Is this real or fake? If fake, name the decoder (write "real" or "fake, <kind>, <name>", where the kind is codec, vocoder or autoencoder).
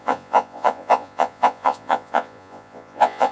fake, vocoder, Vocos